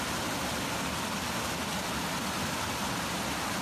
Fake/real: real